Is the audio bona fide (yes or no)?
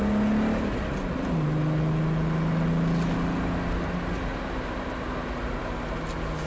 yes